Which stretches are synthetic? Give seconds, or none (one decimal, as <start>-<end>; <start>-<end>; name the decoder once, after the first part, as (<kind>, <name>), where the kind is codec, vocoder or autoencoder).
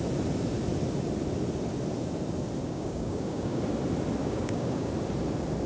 2.6-3.6 (codec, DAC); 4.2-4.9